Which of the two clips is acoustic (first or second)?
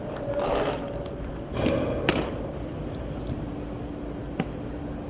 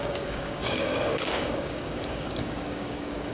first